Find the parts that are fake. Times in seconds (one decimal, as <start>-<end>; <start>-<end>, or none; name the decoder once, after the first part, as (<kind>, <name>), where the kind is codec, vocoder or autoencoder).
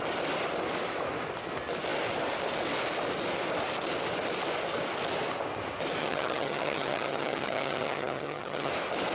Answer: 6.0-8.7 (vocoder, HiFi-GAN)